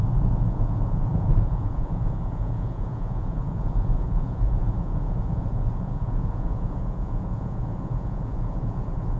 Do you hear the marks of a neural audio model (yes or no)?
yes